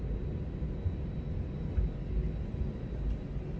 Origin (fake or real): real